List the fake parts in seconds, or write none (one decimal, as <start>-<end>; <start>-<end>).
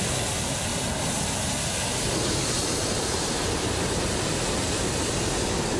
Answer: none